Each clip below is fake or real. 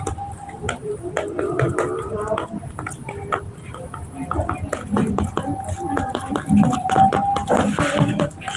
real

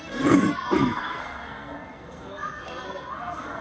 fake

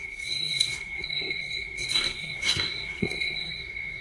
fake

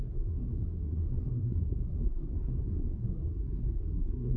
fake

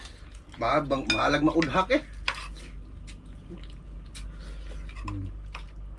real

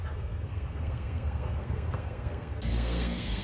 fake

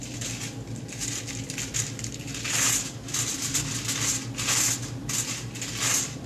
real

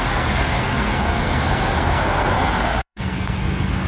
fake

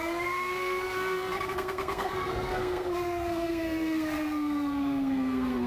fake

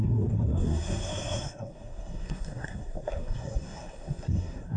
fake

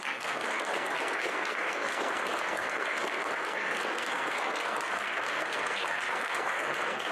fake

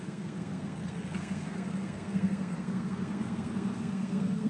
fake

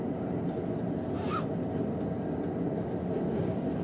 real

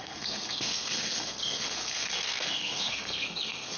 fake